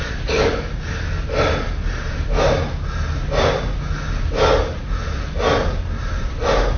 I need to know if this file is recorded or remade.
recorded